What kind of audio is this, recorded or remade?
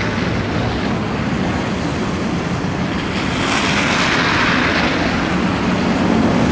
recorded